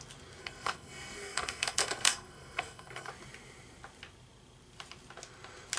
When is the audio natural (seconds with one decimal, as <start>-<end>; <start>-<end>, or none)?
0.0-0.4; 3.1-5.8